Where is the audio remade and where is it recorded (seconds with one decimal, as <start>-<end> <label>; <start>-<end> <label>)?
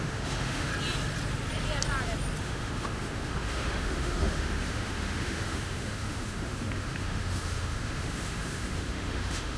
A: 0.0-0.7 remade; 0.7-2.4 recorded; 2.4-9.6 remade